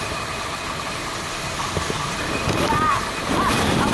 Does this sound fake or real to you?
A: real